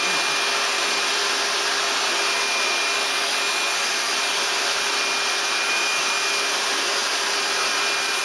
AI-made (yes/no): no